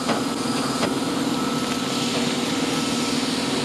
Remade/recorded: recorded